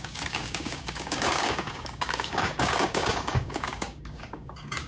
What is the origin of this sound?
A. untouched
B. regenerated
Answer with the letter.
B